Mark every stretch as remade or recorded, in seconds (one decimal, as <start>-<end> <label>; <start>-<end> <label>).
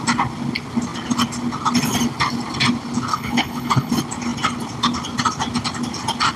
0.0-3.1 recorded; 3.1-3.9 remade; 3.9-6.4 recorded